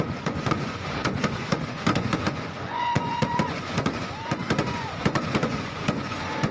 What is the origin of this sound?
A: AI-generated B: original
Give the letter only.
A